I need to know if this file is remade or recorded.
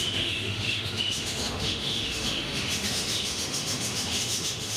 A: remade